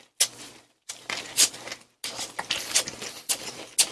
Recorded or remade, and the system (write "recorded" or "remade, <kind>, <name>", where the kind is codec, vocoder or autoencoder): recorded